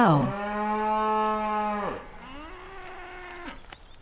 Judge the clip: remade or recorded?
recorded